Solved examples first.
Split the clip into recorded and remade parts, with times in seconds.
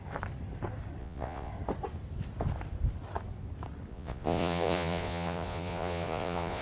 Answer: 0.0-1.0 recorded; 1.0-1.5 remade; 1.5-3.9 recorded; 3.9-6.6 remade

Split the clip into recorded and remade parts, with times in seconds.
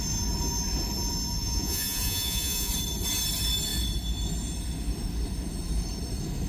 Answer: 0.0-1.4 recorded; 1.4-2.7 remade; 2.7-6.5 recorded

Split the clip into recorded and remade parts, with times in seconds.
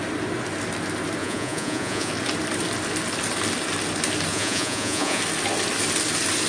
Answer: 0.0-1.2 recorded; 1.2-2.1 remade; 2.1-4.3 recorded; 4.3-5.2 remade; 5.2-6.5 recorded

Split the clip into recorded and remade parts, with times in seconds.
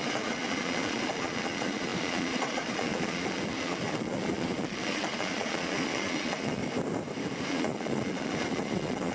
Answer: 0.0-6.6 remade; 6.6-7.5 recorded; 7.5-9.1 remade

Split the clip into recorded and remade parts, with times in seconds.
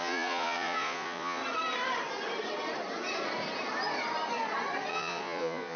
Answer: 0.0-1.4 remade; 1.4-4.9 recorded; 4.9-5.8 remade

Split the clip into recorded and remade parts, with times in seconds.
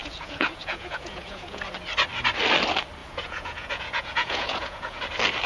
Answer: 0.0-1.6 remade; 1.6-3.0 recorded; 3.0-5.0 remade; 5.0-5.5 recorded